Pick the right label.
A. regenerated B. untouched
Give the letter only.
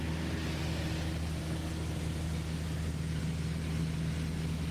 B